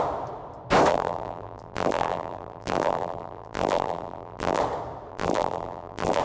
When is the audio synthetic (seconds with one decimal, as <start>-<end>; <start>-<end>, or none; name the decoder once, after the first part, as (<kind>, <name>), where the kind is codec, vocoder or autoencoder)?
0.9-4.6 (vocoder, BigVGAN v2); 5.1-6.2